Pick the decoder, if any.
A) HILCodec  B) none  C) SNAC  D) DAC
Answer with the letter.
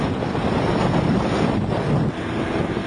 B